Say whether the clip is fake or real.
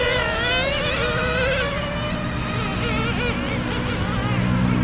real